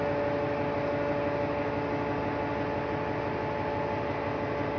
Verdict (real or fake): real